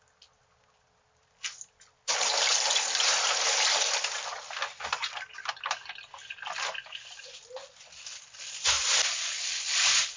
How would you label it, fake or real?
fake